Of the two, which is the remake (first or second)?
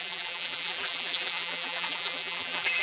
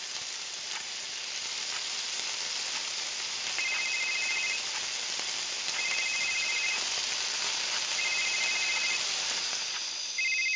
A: first